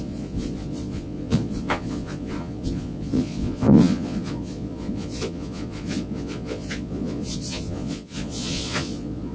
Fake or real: fake